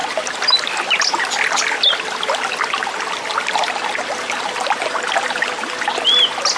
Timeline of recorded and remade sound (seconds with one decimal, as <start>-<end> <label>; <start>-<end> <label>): 0.0-6.6 recorded